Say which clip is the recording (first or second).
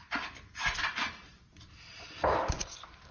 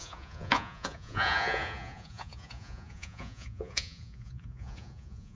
first